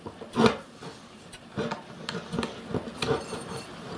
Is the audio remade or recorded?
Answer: recorded